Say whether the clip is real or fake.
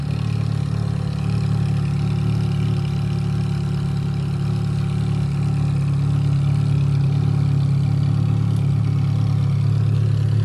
real